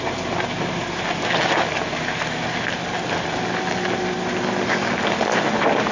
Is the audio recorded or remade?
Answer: recorded